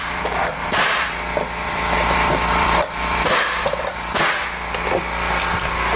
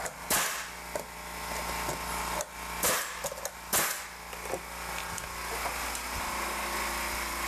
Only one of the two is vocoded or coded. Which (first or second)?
first